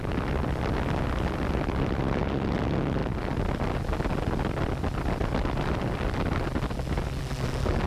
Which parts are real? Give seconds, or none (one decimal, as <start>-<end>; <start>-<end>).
0.0-7.9